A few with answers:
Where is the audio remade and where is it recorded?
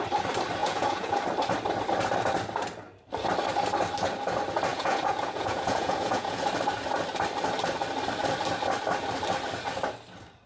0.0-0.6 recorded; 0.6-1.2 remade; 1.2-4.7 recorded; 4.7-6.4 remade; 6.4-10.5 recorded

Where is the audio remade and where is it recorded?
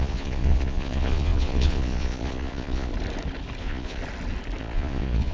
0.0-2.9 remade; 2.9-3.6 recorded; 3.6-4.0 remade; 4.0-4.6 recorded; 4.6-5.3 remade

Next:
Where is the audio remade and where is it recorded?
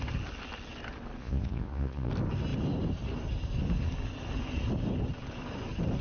0.0-1.2 recorded; 1.2-2.1 remade; 2.1-6.0 recorded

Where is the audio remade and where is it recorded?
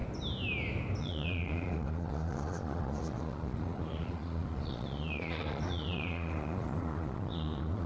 0.0-1.0 recorded; 1.0-7.9 remade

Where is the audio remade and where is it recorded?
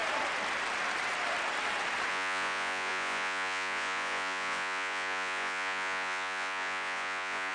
0.0-2.1 recorded; 2.1-7.5 remade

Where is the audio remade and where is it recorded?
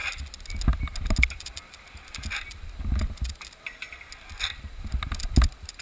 0.0-5.8 recorded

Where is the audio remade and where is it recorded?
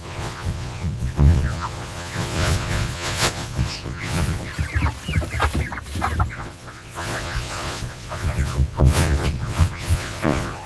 0.0-4.5 remade; 4.5-6.3 recorded; 6.3-10.7 remade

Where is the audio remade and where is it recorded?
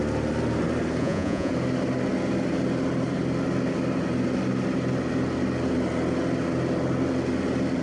0.0-1.0 recorded; 1.0-1.5 remade; 1.5-7.8 recorded